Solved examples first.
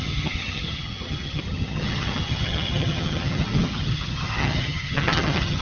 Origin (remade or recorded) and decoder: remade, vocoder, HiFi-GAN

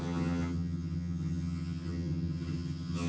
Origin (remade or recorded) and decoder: remade, vocoder, HiFi-GAN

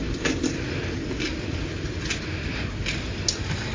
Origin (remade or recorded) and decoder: recorded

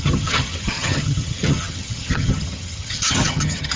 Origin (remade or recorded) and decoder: remade, vocoder, HiFi-GAN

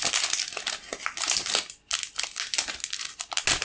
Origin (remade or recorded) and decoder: recorded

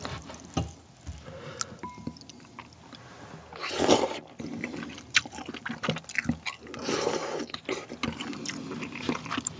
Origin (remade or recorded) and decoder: recorded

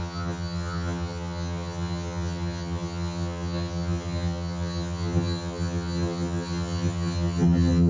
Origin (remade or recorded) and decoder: remade, vocoder, HiFi-GAN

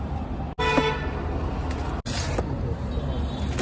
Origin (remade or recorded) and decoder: recorded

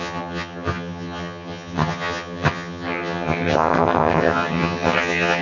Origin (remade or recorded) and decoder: remade, vocoder, HiFi-GAN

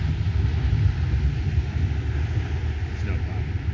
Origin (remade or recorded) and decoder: recorded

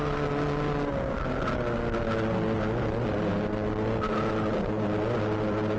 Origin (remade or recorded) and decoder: recorded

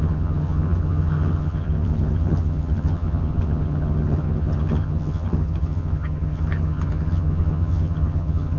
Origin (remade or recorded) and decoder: remade, vocoder, HiFi-GAN